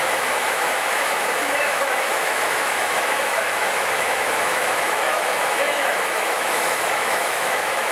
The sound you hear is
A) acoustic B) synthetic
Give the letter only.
B